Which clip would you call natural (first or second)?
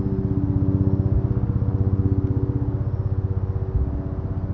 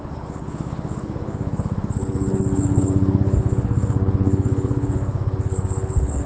first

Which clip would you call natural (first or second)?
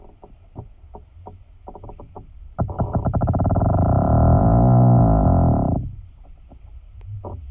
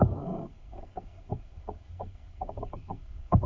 first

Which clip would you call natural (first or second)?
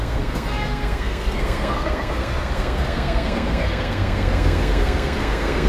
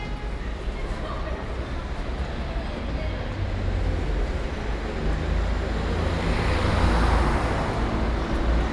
second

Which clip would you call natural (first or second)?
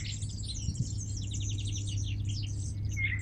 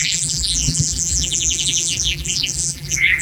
first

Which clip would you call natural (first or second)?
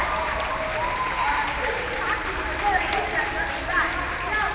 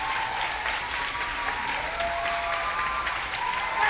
second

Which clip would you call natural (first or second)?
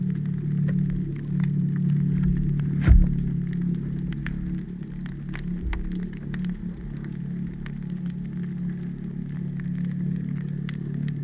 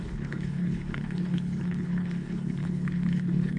first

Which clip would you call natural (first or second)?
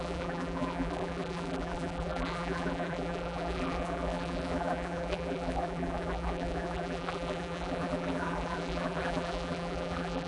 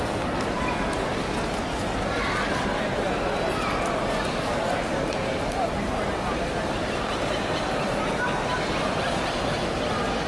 second